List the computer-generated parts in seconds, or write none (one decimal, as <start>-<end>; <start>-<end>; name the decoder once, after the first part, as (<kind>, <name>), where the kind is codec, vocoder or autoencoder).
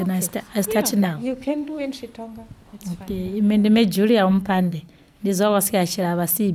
1.0-1.9 (codec, SNAC); 4.3-5.2